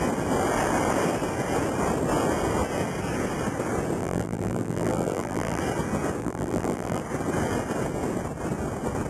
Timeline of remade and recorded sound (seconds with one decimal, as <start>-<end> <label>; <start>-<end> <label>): 0.0-4.0 recorded; 4.0-5.6 remade; 5.6-6.2 recorded; 6.2-7.0 remade; 7.0-9.1 recorded